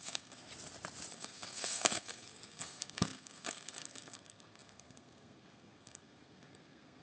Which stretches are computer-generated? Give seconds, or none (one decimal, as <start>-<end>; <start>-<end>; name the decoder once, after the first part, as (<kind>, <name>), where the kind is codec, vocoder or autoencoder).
0.0-0.5 (codec, SNAC); 1.1-7.0